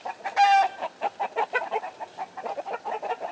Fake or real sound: real